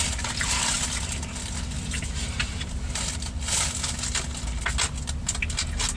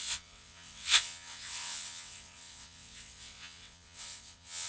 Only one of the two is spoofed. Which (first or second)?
second